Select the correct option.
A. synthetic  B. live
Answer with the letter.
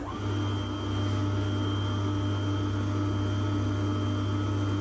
B